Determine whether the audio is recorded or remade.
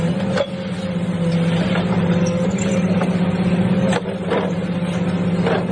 recorded